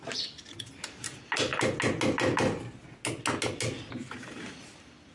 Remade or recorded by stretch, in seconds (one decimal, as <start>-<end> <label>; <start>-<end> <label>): 0.0-5.1 recorded